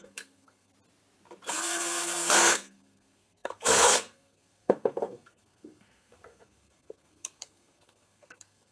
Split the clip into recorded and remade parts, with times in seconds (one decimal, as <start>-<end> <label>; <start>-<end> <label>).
0.0-0.7 remade; 0.7-1.5 recorded; 1.5-8.7 remade